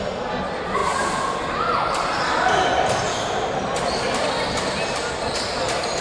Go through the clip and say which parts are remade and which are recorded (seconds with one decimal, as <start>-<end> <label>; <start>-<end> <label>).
0.0-6.0 recorded

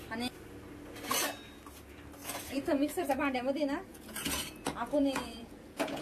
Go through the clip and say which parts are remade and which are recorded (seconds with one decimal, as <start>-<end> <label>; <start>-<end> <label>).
0.0-2.2 recorded; 2.2-3.1 remade; 3.1-3.9 recorded; 3.9-6.0 remade

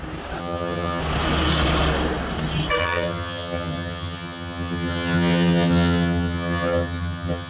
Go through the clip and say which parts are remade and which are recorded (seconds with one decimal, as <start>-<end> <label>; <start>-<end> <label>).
0.0-0.4 recorded; 0.4-1.0 remade; 1.0-2.8 recorded; 2.8-7.5 remade

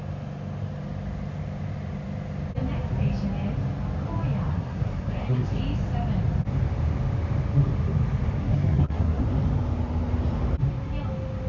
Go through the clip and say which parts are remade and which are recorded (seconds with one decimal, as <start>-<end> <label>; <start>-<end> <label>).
0.0-4.5 recorded; 4.5-5.6 remade; 5.6-8.4 recorded; 8.4-9.2 remade; 9.2-11.5 recorded

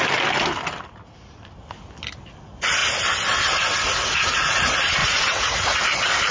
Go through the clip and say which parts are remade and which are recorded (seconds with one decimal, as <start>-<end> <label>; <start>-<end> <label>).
0.0-4.0 recorded; 4.0-4.6 remade; 4.6-5.0 recorded; 5.0-5.8 remade; 5.8-6.3 recorded

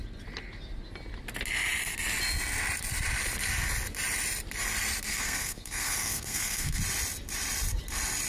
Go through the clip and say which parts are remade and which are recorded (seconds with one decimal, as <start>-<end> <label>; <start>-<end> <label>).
0.0-5.1 recorded; 5.1-6.8 remade; 6.8-8.3 recorded

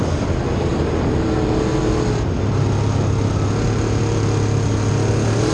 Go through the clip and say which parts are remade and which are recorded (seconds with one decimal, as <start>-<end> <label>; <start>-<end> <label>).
0.0-5.5 recorded

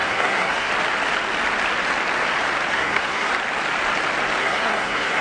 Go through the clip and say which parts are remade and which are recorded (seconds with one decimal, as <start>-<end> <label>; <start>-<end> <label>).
0.0-0.7 remade; 0.7-2.7 recorded; 2.7-3.3 remade; 3.3-4.4 recorded; 4.4-5.2 remade